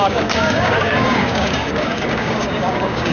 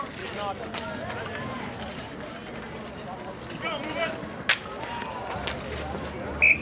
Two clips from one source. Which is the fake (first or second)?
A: first